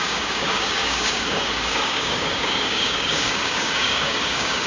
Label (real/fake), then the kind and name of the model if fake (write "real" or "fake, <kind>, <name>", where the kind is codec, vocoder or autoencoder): fake, codec, DAC